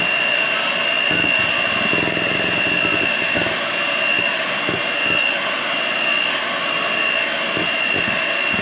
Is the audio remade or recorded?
recorded